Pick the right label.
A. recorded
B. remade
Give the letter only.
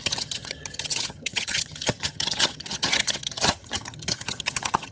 B